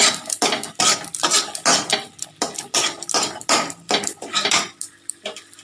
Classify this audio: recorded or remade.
recorded